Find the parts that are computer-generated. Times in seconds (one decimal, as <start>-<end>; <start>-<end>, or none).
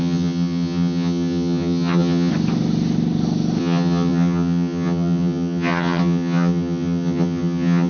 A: 0.0-2.3; 3.6-7.9